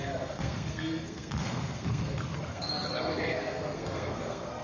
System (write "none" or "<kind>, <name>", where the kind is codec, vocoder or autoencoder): codec, SNAC